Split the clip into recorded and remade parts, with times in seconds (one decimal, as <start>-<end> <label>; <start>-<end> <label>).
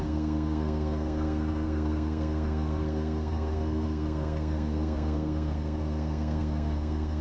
0.0-7.2 remade